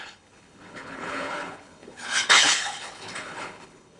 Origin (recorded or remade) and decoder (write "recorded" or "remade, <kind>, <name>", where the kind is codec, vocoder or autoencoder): remade, codec, HILCodec